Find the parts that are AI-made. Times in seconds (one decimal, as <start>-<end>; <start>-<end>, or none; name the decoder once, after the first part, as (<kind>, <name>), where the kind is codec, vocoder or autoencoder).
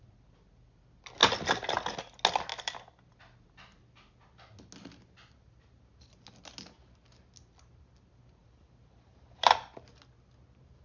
8.4-9.5 (vocoder, BigVGAN v2)